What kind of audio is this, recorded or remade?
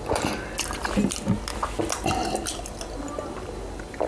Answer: recorded